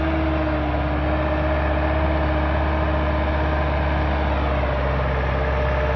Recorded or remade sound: recorded